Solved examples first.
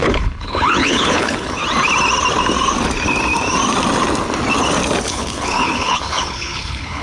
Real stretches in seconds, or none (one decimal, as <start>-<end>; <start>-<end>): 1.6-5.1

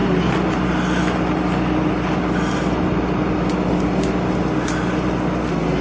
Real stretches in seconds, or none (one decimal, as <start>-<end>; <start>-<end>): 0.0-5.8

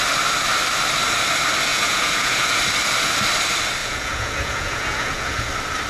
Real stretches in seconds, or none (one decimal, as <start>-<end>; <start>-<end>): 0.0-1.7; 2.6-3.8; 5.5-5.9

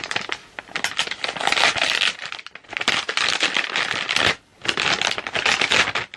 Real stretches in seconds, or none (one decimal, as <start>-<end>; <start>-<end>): 0.0-6.2